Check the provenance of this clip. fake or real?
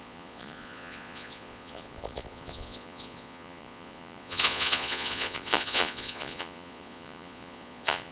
fake